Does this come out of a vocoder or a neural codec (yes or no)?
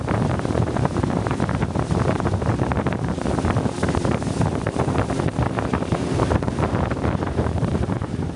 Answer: yes